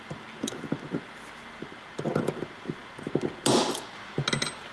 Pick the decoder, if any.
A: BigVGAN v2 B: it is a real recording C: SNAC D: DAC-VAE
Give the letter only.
B